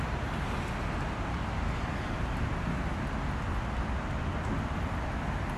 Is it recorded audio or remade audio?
recorded